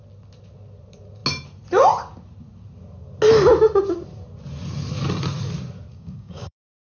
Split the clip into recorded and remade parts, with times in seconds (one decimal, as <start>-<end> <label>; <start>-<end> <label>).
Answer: 0.0-5.9 recorded; 5.9-6.9 remade